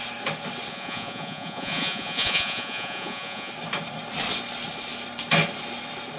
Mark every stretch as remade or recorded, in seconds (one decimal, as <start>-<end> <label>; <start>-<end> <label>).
0.0-0.7 recorded; 0.7-3.5 remade; 3.5-6.2 recorded